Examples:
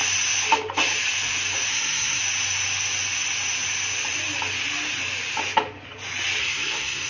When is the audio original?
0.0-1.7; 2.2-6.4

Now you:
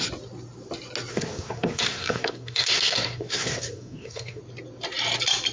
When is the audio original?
0.0-1.1; 4.4-5.5

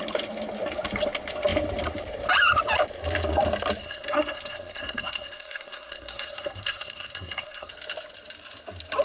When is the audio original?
0.0-3.8; 7.7-9.0

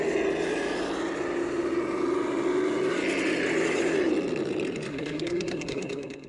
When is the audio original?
0.0-4.9

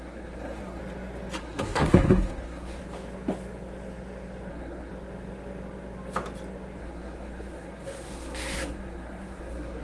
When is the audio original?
0.8-1.4; 2.8-4.5; 4.9-6.8